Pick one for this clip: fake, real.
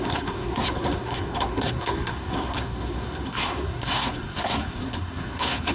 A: fake